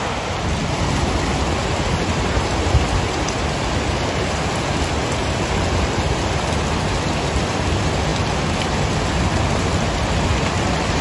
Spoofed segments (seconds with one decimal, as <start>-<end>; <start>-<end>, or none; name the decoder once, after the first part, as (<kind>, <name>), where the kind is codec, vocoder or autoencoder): none